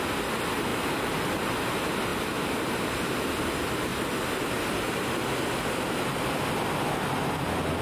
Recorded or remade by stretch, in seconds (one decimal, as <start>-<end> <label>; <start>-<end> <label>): 0.0-0.7 recorded; 0.7-1.5 remade; 1.5-2.1 recorded; 2.1-2.8 remade; 2.8-7.8 recorded